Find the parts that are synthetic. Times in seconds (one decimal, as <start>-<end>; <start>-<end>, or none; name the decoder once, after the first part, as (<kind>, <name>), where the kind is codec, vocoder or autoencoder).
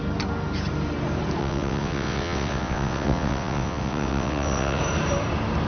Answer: 1.4-4.8 (vocoder, WaveNeXt)